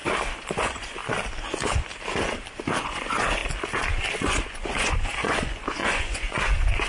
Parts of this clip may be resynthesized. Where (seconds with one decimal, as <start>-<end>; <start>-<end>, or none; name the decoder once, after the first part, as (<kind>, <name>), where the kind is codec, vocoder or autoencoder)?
0.6-1.0 (vocoder, Vocos); 2.8-3.4; 4.1-6.9